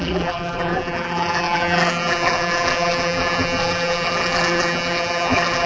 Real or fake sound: fake